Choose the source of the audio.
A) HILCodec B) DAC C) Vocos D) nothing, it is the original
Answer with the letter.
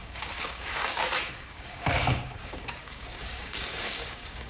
B